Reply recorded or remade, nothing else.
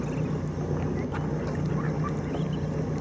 recorded